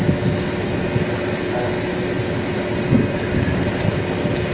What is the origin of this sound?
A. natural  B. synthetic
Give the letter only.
A